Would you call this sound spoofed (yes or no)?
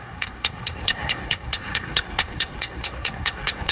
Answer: yes